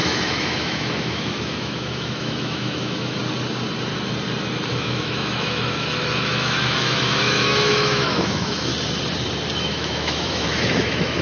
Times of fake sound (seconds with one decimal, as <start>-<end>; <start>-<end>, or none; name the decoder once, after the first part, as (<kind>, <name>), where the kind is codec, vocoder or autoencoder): 0.0-3.2 (autoencoder, DAC-VAE); 4.7-8.7; 9.6-11.2